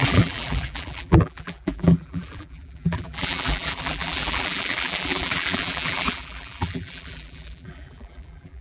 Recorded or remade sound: remade